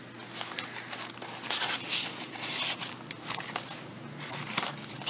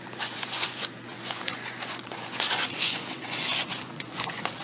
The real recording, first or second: first